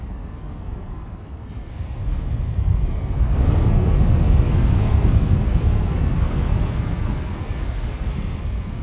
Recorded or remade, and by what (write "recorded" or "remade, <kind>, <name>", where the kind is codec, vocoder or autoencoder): remade, codec, SNAC